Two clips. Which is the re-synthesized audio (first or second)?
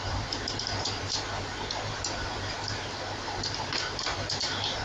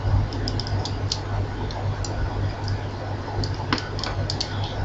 first